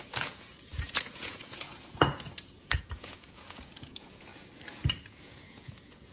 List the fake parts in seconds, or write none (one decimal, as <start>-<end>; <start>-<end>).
0.0-4.3; 5.2-6.1